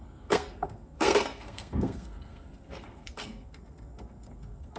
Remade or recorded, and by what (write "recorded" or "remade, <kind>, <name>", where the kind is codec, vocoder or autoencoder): remade, codec, SNAC